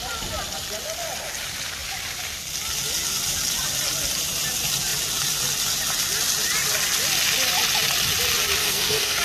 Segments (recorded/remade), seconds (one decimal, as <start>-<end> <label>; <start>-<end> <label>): 0.0-8.6 recorded; 8.6-9.2 remade

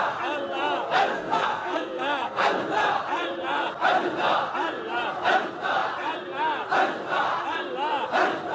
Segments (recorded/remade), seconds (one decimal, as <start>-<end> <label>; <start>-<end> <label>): 0.0-1.0 recorded; 1.0-2.6 remade; 2.6-8.5 recorded

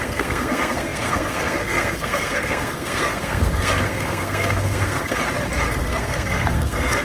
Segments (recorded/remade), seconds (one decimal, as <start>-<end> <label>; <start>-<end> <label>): 0.0-5.2 remade; 5.2-5.8 recorded; 5.8-7.0 remade

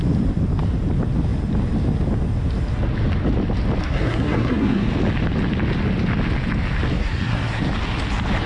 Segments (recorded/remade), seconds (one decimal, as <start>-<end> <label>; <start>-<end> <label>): 0.0-3.8 recorded; 3.8-4.9 remade; 4.9-6.9 recorded; 6.9-7.6 remade; 7.6-8.5 recorded

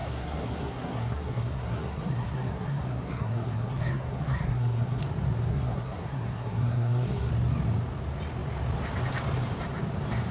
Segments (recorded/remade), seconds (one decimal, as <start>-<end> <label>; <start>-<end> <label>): 0.0-5.0 remade; 5.0-5.5 recorded; 5.5-7.3 remade; 7.3-10.3 recorded